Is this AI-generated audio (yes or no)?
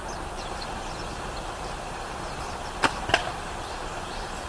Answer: no